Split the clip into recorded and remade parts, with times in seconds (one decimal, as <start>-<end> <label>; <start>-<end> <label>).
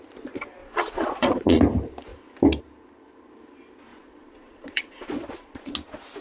0.0-0.6 recorded; 0.6-1.6 remade; 1.6-3.9 recorded; 3.9-5.7 remade; 5.7-6.2 recorded